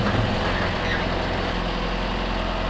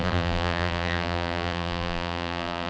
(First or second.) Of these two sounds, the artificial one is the second